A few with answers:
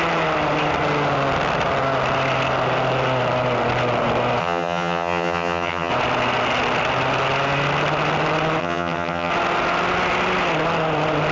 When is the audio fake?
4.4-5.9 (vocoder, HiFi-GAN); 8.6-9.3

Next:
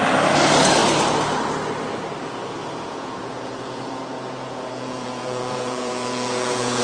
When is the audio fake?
2.6-6.8 (vocoder, Vocos)

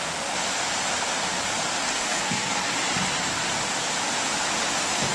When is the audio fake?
2.0-2.7 (codec, SNAC)

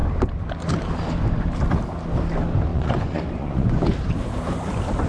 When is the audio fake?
2.7-3.8 (vocoder, Vocos)

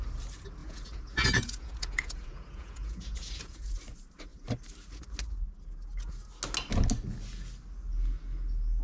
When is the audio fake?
0.6-3.7 (vocoder, Vocos)

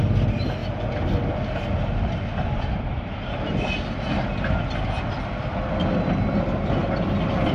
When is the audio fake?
none